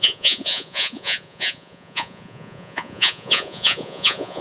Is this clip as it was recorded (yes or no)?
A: no